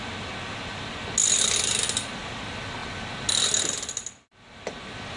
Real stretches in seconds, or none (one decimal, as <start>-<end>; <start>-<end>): 0.0-5.2